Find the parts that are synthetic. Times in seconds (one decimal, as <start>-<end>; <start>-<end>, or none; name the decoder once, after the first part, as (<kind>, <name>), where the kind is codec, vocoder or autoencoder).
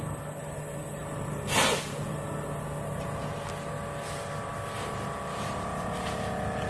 none